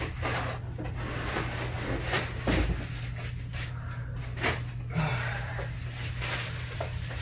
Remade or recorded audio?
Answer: recorded